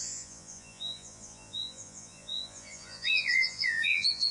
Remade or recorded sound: remade